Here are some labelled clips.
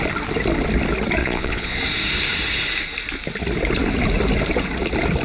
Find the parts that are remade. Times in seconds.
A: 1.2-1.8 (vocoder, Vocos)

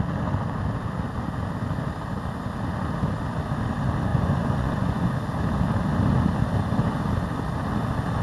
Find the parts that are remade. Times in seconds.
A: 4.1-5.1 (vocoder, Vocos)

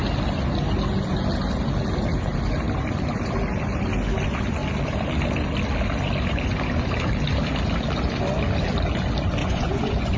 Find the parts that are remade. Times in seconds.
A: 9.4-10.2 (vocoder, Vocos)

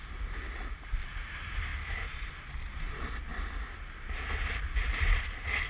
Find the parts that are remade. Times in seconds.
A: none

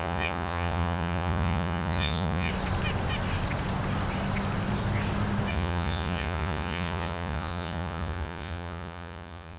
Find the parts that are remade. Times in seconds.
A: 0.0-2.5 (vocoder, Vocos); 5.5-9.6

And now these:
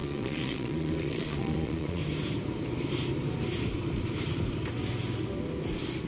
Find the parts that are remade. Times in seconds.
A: 0.0-2.0 (vocoder, Vocos)

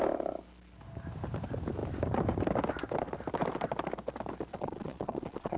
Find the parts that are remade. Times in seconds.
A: 4.5-5.6 (vocoder, Vocos)

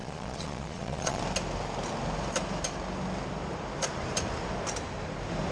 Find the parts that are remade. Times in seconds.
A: 0.0-1.2 (vocoder, Vocos)